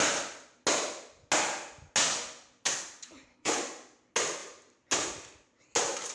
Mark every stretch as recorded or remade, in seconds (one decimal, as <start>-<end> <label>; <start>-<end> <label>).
0.0-3.0 recorded; 3.0-3.6 remade; 3.6-6.1 recorded